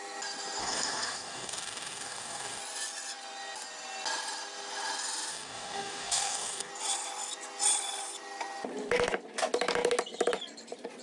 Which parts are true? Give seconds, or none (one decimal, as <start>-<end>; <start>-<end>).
0.0-0.6; 2.6-5.3; 6.7-11.0